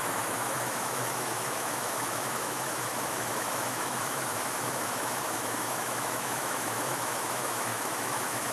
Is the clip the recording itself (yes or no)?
no